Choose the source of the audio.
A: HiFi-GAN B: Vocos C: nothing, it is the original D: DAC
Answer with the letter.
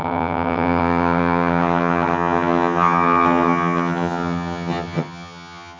A